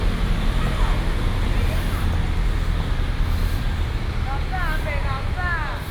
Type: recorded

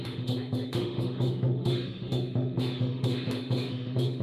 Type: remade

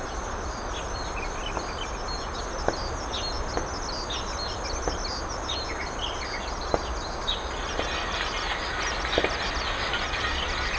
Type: recorded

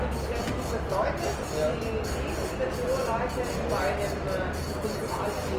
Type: recorded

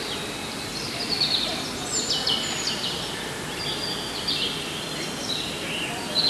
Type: recorded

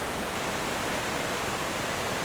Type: recorded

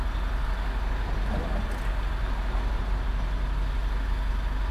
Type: recorded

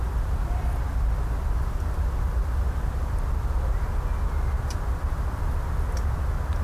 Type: recorded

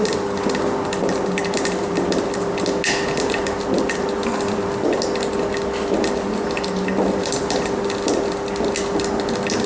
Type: recorded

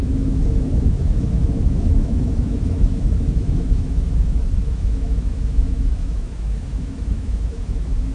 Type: remade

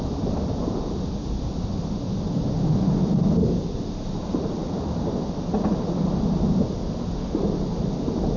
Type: recorded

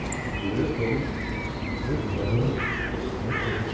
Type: recorded